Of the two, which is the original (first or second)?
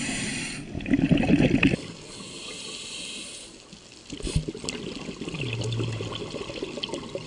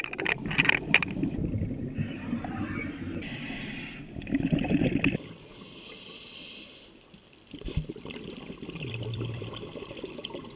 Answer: first